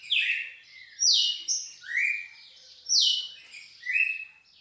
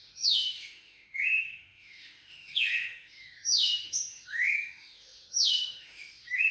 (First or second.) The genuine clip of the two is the first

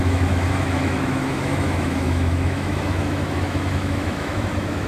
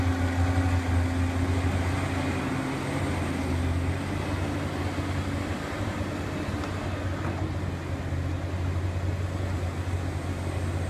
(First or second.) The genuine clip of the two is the second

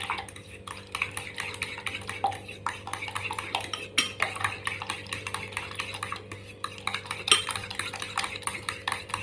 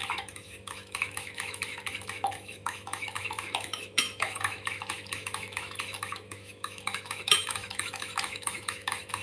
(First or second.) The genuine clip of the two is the first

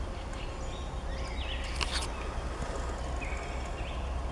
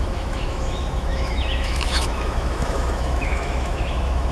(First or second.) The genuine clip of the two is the first